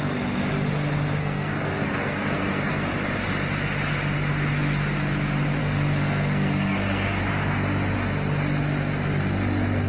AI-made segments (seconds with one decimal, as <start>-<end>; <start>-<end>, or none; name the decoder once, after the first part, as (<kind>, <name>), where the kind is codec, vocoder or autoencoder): 1.2-2.8 (codec, SNAC); 5.6-7.2